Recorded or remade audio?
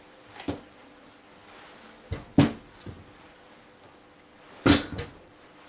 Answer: recorded